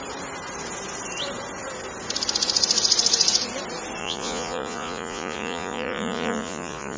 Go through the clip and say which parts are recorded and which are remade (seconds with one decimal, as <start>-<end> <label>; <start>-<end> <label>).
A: 0.0-4.0 recorded; 4.0-7.0 remade